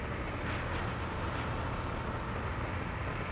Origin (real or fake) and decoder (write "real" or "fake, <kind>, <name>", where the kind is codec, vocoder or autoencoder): real